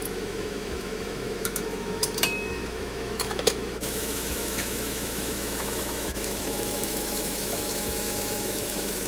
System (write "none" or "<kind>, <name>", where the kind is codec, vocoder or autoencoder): autoencoder, DAC-VAE